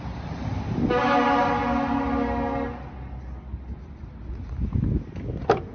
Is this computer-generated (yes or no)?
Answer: no